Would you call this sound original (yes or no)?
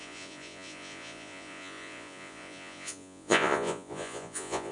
no